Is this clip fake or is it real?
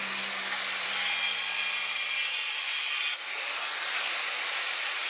real